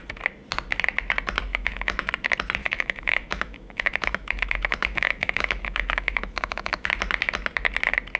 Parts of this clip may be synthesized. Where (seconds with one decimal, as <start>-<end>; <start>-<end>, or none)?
1.5-2.1; 2.6-6.9

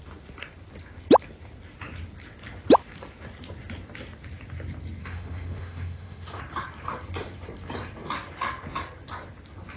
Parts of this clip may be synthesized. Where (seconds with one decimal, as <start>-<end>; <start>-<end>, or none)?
5.0-6.4

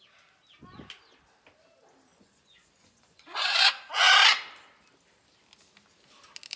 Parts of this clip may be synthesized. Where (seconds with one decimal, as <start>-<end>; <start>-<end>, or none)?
2.1-3.6